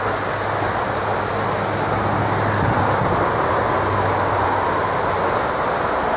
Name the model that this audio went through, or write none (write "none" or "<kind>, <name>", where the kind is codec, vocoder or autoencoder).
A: none